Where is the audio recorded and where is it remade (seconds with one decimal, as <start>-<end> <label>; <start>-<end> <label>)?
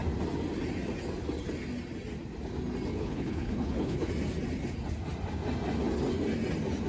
0.0-2.9 recorded; 2.9-4.1 remade; 4.1-6.9 recorded